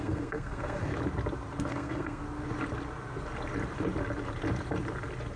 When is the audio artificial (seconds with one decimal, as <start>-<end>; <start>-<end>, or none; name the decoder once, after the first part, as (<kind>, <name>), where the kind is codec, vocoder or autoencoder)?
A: 0.0-0.9 (codec, SNAC); 1.7-2.2